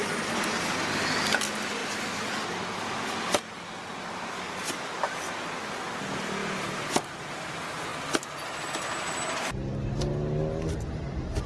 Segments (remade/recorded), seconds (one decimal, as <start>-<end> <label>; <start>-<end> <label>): 0.0-11.5 recorded